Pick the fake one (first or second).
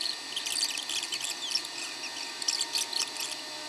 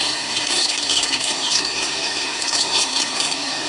second